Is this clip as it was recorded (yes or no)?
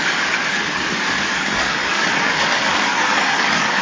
no